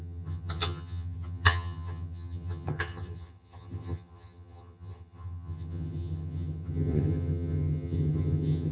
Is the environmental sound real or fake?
fake